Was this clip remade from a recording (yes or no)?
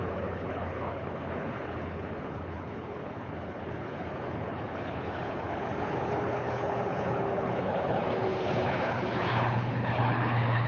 yes